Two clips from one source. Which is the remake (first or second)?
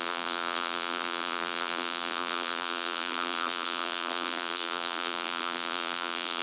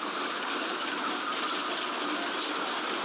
first